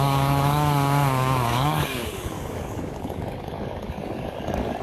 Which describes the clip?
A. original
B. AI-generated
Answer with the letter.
B